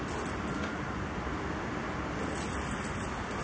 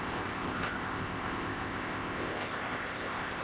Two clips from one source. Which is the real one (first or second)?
first